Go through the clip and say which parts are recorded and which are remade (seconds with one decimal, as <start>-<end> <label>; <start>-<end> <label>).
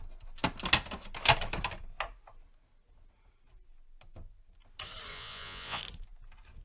0.0-5.1 recorded; 5.1-5.8 remade; 5.8-6.6 recorded